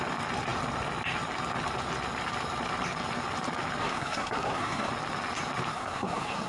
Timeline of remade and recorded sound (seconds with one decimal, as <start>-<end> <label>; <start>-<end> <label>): 0.0-3.8 recorded; 3.8-4.9 remade; 4.9-5.7 recorded; 5.7-6.5 remade